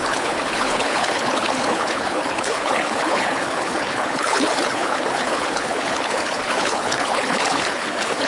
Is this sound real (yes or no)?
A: no